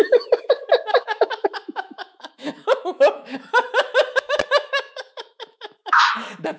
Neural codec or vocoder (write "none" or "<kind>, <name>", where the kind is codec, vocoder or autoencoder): autoencoder, DAC-VAE